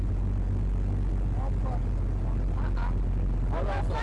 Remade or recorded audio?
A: recorded